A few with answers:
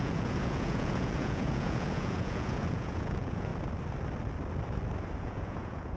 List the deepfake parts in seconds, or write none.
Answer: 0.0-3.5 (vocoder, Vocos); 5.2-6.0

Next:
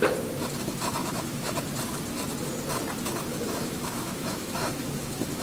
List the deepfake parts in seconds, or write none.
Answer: 1.0-1.6 (autoencoder, DAC-VAE); 3.3-5.4

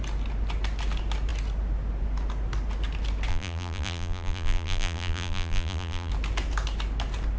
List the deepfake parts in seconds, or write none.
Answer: 3.3-6.1 (vocoder, BigVGAN v2)

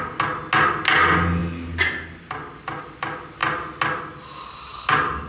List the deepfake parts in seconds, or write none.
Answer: none

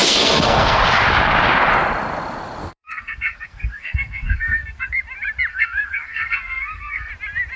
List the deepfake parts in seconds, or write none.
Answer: 0.0-0.8 (codec, SNAC); 2.6-5.0; 5.5-7.1

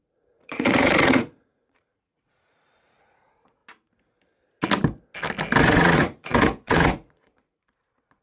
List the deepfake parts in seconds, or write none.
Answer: 0.0-3.6 (vocoder, Vocos); 5.6-8.2